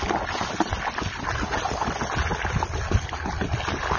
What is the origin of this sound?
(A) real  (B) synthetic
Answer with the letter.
A